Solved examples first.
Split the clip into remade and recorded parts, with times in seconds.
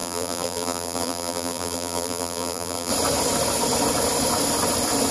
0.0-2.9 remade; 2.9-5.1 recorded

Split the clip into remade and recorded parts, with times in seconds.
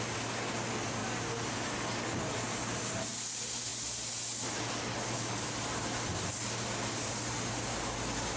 0.0-8.4 recorded